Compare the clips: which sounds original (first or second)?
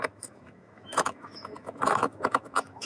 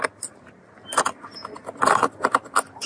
second